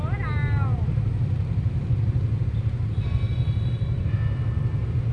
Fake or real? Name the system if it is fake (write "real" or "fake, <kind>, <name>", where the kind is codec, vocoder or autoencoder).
real